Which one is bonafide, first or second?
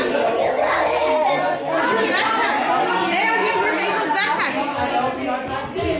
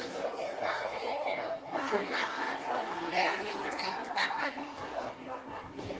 first